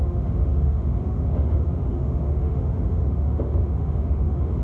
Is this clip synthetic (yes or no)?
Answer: yes